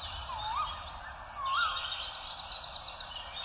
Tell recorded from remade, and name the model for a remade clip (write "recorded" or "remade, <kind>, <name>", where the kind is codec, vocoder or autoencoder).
recorded